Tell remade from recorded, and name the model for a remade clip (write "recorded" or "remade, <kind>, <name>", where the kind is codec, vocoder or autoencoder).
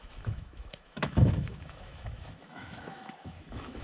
remade, autoencoder, DAC-VAE